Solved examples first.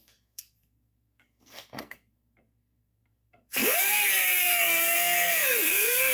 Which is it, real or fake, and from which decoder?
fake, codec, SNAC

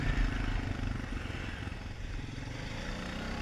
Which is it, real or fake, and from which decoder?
real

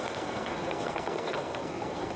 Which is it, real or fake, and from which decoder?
fake, codec, SNAC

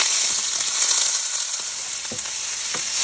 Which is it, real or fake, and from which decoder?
real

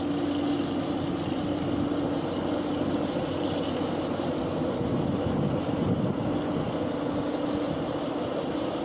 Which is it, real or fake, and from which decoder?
real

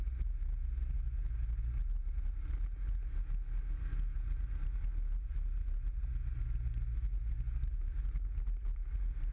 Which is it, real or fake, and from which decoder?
real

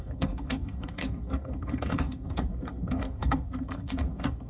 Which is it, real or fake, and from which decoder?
fake, codec, SNAC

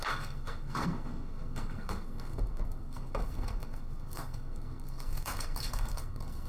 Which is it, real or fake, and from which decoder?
fake, codec, SNAC